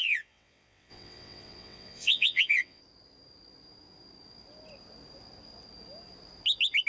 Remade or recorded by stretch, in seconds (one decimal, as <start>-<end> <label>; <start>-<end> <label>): 0.0-2.8 remade; 2.8-6.9 recorded